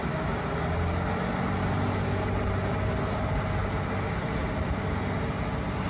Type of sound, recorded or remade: recorded